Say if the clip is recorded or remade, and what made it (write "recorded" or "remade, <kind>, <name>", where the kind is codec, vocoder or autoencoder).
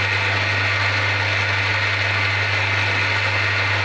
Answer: recorded